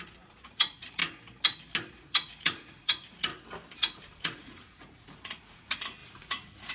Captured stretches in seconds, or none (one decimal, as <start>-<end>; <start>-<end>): 1.0-1.9; 3.3-3.8